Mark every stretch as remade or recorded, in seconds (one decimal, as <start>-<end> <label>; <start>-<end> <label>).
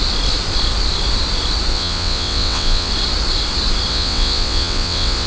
0.0-1.7 recorded; 1.7-2.9 remade; 2.9-3.9 recorded; 3.9-5.3 remade